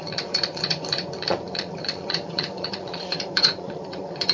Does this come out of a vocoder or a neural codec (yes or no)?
yes